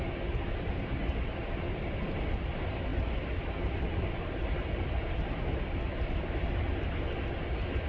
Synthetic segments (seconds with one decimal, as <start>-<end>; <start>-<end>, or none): none